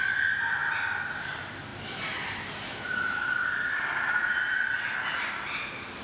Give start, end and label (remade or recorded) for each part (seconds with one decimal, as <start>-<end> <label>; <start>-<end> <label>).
0.0-6.0 recorded